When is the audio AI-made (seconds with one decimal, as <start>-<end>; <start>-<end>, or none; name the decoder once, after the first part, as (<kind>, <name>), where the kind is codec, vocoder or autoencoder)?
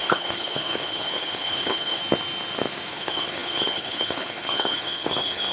0.0-2.0 (codec, HILCodec); 2.9-5.5